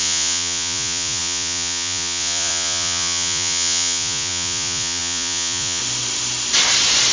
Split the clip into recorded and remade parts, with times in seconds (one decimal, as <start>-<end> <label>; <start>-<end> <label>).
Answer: 0.0-5.8 remade; 5.8-7.1 recorded